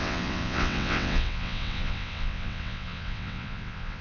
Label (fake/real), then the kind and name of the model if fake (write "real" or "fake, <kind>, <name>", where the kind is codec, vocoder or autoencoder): fake, vocoder, WaveNeXt